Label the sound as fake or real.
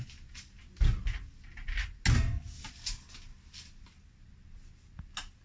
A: real